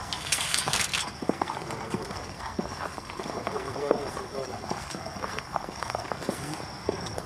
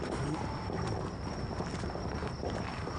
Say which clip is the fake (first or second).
first